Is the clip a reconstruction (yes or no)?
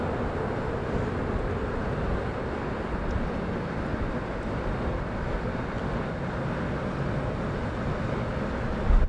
no